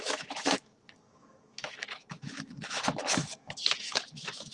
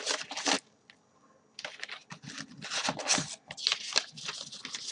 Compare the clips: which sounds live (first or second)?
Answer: second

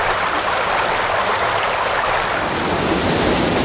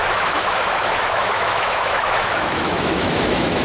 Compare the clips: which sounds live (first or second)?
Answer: first